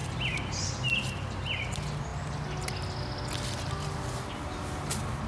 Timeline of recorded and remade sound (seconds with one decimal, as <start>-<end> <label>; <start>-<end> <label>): 0.0-5.3 recorded